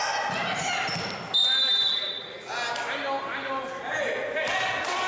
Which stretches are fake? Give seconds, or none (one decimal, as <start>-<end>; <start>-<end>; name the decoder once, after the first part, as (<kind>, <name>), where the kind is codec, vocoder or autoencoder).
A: 2.0-2.5 (vocoder, Vocos)